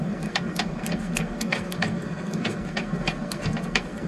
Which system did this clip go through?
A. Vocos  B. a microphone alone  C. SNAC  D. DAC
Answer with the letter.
C